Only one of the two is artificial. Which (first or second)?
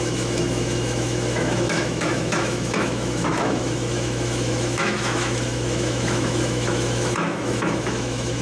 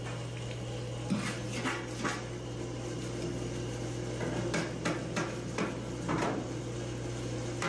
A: first